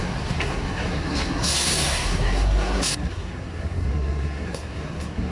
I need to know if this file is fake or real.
fake